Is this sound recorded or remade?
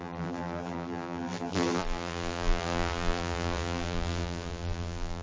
remade